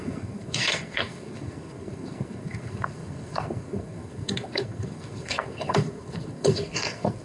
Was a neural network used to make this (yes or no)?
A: yes